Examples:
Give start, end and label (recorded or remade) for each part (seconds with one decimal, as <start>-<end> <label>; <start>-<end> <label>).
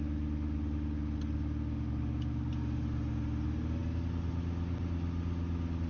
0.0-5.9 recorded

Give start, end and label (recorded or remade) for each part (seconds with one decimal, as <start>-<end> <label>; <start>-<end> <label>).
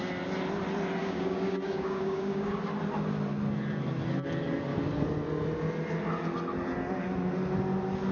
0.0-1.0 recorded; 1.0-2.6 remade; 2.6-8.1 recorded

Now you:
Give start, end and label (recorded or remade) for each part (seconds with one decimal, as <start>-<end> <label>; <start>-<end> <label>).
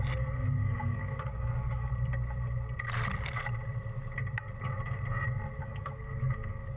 0.0-0.6 recorded; 0.6-1.9 remade; 1.9-5.6 recorded; 5.6-6.8 remade